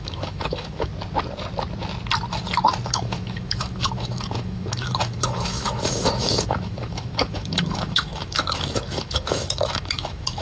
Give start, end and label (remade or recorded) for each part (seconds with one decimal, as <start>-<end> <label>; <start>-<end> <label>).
0.0-0.9 remade; 0.9-2.9 recorded; 2.9-10.4 remade